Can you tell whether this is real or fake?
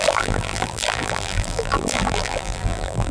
fake